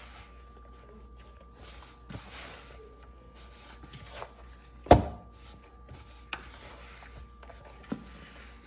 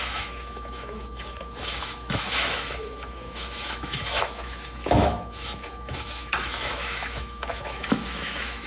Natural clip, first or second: first